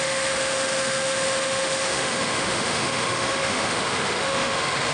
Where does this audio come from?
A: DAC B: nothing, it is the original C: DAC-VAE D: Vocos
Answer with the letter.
C